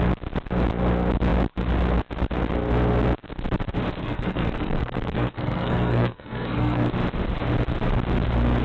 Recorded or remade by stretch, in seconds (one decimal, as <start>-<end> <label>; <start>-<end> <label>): 0.0-4.0 recorded; 4.0-6.9 remade; 6.9-8.6 recorded